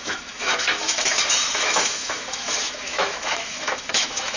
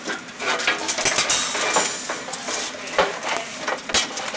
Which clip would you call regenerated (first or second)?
first